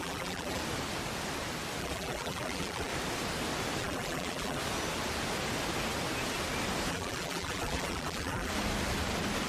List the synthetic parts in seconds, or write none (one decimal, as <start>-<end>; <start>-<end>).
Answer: 0.0-0.6; 1.8-2.9; 3.8-4.6; 6.9-8.5